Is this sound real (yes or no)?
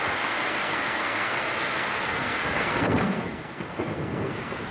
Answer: no